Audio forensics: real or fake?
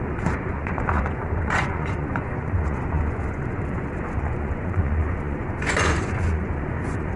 fake